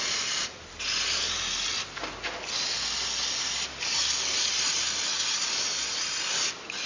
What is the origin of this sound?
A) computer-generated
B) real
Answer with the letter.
B